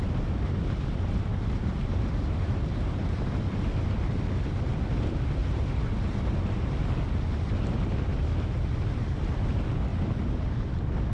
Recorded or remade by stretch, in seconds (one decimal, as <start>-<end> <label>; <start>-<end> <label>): 0.0-1.3 recorded; 1.3-3.6 remade; 3.6-5.4 recorded; 5.4-6.8 remade; 6.8-11.1 recorded